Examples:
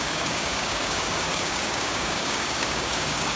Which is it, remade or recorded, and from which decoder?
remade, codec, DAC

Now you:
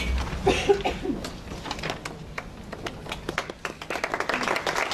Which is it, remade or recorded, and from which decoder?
recorded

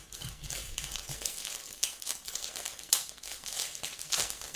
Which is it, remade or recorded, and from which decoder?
remade, codec, SNAC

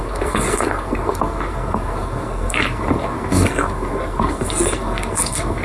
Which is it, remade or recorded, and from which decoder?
remade, codec, SNAC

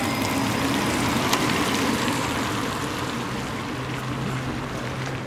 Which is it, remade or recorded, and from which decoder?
recorded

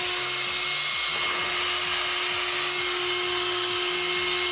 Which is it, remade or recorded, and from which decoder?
recorded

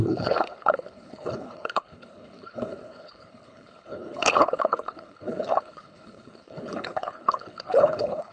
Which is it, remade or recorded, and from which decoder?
remade, codec, HILCodec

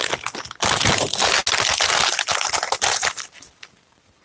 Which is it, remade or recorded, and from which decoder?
recorded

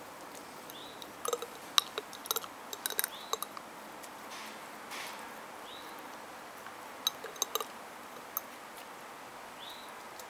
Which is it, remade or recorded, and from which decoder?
recorded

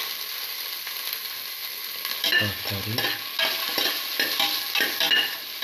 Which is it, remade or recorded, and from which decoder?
recorded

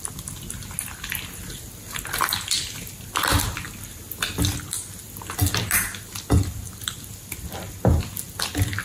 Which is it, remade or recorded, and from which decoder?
recorded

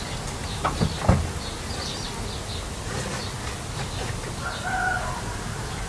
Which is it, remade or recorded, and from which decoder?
recorded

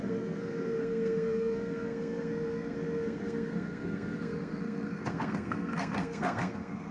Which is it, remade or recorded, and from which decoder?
remade, codec, SNAC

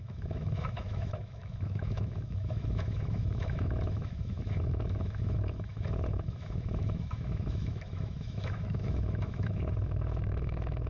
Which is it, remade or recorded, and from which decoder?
remade, autoencoder, DAC-VAE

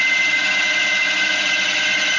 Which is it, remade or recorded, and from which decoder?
recorded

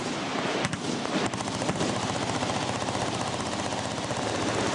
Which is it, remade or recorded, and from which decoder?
recorded